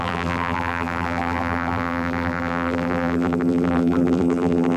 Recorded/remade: remade